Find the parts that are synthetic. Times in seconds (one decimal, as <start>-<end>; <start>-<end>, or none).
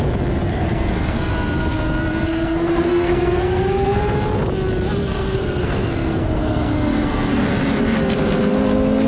0.5-1.3; 2.1-4.0; 5.0-7.5